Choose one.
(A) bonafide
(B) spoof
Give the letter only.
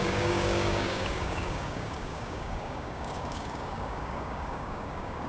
B